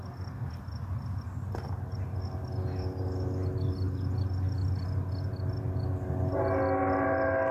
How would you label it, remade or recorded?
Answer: recorded